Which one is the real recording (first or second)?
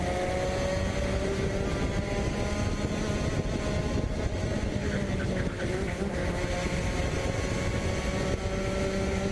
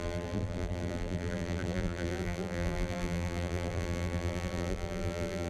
first